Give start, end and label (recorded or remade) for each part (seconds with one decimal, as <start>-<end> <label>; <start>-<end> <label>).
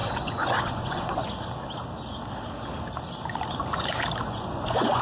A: 0.0-1.2 remade; 1.2-4.2 recorded; 4.2-5.0 remade